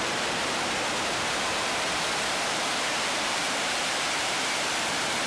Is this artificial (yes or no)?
yes